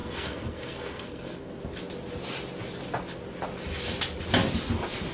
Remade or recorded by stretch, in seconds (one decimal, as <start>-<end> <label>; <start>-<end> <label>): 0.0-1.6 remade; 1.6-5.1 recorded